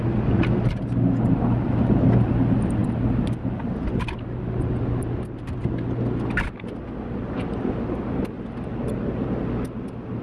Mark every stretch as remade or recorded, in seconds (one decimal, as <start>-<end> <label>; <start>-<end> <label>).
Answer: 0.0-10.2 recorded